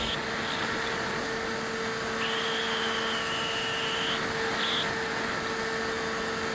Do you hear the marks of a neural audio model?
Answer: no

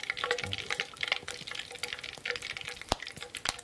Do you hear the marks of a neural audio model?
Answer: no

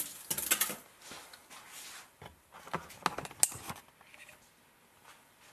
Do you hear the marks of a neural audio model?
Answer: no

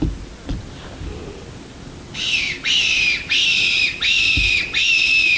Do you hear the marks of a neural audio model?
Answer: no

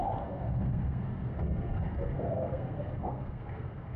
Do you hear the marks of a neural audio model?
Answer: yes